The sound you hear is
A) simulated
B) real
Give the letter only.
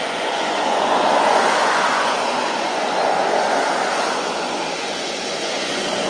A